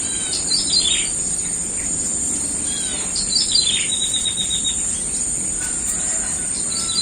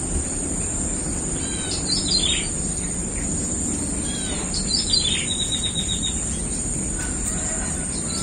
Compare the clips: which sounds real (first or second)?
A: second